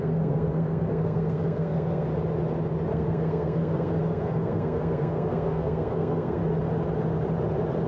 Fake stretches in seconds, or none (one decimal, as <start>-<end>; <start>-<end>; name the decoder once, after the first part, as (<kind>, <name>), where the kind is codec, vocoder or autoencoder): 0.0-2.1 (codec, SNAC); 2.9-6.4